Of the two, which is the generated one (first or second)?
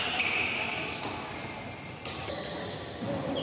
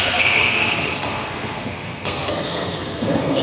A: second